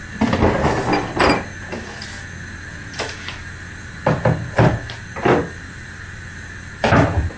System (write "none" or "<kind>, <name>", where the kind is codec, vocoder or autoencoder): none